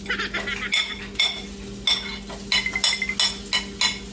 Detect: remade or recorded recorded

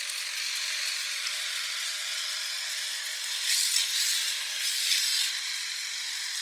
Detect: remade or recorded remade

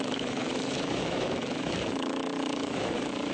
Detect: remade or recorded remade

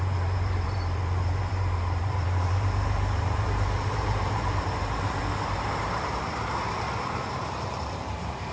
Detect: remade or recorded remade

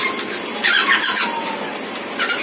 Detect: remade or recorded recorded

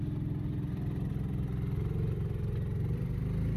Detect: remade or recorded recorded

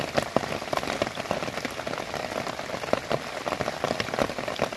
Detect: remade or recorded recorded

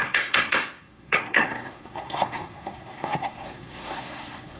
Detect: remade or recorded remade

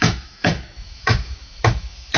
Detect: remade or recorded remade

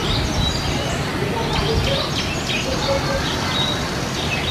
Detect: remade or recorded recorded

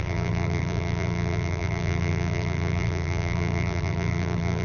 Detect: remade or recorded remade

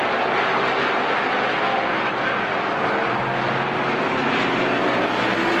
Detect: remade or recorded recorded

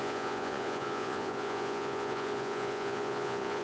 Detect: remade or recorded remade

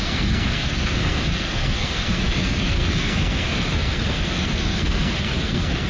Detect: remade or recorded remade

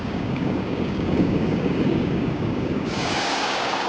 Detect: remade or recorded remade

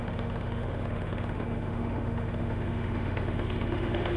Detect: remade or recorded remade